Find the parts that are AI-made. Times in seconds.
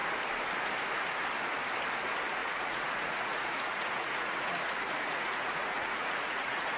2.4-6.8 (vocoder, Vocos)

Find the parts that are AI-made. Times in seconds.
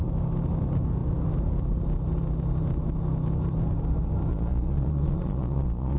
4.3-6.0 (vocoder, Vocos)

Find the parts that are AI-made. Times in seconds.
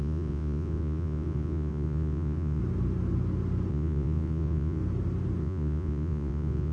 0.0-2.6 (vocoder, Vocos); 3.7-4.8; 5.4-6.7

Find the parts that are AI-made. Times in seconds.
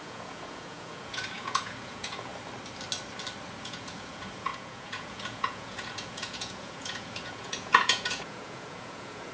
0.0-2.3 (vocoder, Vocos); 3.6-9.3